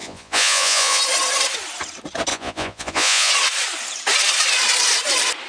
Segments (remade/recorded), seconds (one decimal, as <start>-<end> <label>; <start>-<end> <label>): 0.0-1.0 remade; 1.0-2.3 recorded; 2.3-3.3 remade; 3.3-5.5 recorded